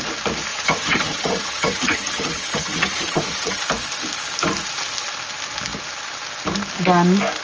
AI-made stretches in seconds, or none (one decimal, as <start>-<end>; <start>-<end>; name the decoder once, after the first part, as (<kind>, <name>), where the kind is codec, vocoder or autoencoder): 0.5-3.6 (vocoder, HiFi-GAN)